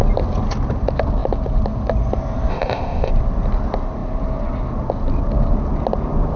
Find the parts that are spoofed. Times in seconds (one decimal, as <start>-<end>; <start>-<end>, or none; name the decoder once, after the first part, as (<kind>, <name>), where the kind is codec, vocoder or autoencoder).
2.5-3.1 (codec, ZipCodec)